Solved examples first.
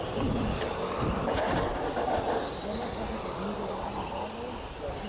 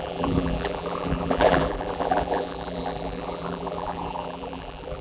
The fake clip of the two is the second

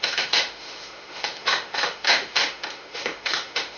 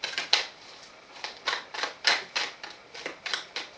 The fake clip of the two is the first